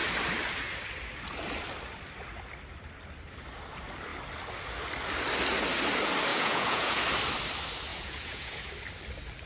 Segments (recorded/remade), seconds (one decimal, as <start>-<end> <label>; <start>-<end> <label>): 0.0-6.3 recorded; 6.3-7.0 remade; 7.0-7.9 recorded; 7.9-8.7 remade; 8.7-9.5 recorded